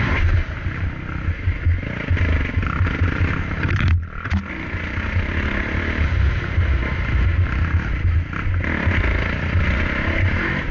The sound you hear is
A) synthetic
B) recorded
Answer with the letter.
B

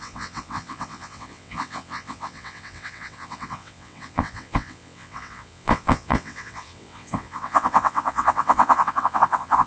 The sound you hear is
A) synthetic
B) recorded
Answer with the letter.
A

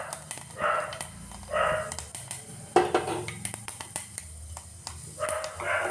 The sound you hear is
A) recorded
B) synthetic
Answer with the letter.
A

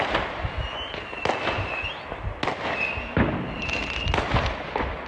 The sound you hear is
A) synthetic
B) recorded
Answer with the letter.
B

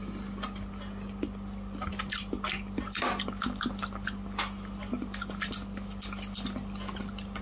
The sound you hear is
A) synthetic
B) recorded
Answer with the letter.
B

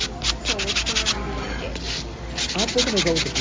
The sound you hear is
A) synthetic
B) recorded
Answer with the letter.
B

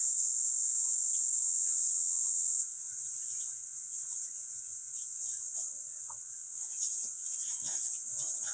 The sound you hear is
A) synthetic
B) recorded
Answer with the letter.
A